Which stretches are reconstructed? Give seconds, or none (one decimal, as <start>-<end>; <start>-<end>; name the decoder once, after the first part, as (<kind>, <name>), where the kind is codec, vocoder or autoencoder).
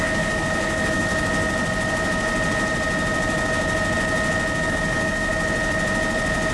0.0-1.1 (codec, DAC); 4.7-5.3